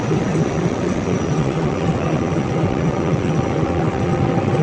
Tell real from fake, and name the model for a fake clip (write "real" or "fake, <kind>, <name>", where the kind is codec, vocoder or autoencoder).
fake, vocoder, WaveNeXt